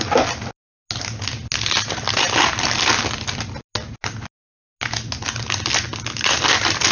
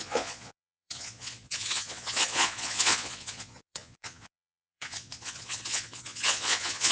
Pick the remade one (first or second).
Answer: second